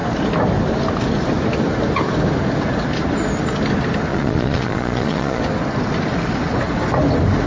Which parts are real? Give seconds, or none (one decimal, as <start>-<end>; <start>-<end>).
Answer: 0.0-4.1; 5.4-7.5